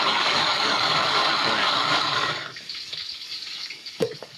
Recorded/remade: remade